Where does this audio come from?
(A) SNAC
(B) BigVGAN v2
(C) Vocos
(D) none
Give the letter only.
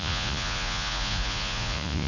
C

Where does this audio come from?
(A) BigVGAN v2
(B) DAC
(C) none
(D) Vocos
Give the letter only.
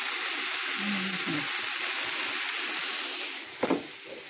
C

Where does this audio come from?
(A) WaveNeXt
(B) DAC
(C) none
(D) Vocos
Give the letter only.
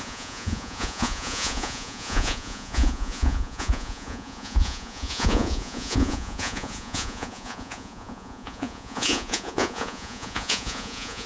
D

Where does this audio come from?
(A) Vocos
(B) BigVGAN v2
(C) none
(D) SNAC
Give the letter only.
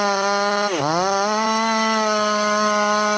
C